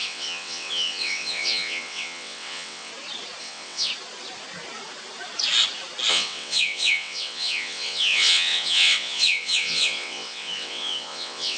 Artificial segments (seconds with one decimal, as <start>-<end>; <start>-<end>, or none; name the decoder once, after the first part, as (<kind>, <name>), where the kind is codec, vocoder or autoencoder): 0.0-2.9 (vocoder, WaveNeXt); 3.4-3.9; 6.1-11.6